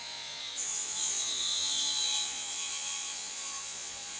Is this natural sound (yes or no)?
no